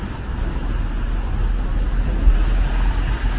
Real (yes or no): yes